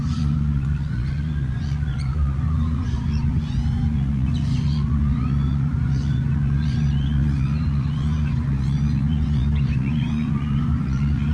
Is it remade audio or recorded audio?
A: remade